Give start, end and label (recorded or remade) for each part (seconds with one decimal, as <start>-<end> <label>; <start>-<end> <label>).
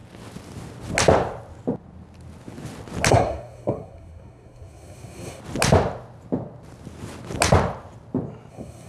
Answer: 0.0-3.1 recorded; 3.1-5.4 remade; 5.4-8.5 recorded; 8.5-8.9 remade